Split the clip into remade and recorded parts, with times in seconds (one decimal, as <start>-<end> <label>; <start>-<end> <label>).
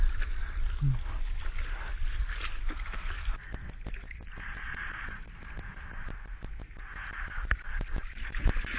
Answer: 0.0-8.8 recorded